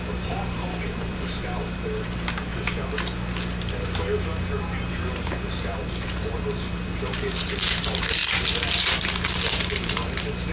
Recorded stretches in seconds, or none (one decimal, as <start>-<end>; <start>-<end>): 2.5-5.0; 8.2-9.4